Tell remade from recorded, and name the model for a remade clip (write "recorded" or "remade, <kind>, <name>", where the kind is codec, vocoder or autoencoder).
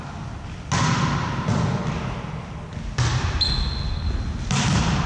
recorded